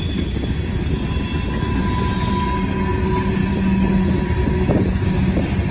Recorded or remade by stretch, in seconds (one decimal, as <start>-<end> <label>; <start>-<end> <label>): 0.0-5.7 recorded